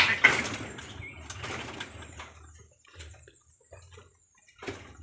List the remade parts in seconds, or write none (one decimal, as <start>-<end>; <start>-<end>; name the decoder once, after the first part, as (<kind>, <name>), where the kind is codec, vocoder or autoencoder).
none